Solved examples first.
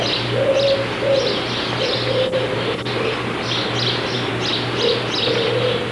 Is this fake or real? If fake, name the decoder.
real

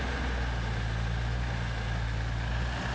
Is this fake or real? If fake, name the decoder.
real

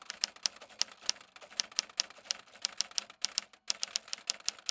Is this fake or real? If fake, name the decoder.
real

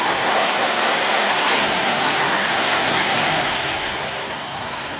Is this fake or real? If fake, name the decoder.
fake, codec, SNAC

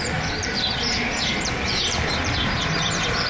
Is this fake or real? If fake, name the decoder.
fake, vocoder, BigVGAN v2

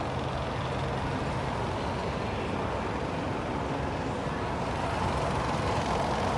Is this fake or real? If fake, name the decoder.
real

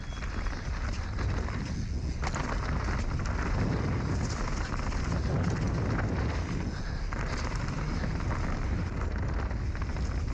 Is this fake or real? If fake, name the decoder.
real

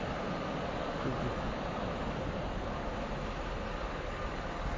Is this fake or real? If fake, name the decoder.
real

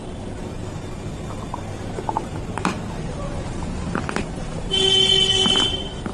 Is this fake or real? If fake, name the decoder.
real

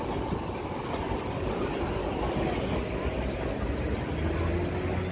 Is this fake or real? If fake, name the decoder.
real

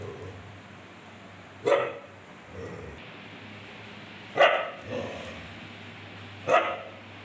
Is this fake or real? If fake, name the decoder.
real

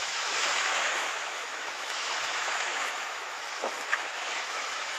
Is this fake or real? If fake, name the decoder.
fake, autoencoder, DAC-VAE